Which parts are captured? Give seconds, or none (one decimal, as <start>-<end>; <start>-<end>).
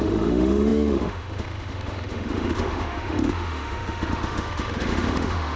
none